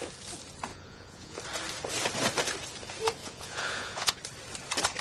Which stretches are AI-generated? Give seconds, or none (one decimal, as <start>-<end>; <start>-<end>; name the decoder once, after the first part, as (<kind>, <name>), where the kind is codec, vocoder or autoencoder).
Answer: 0.7-1.4 (vocoder, Vocos); 3.2-4.2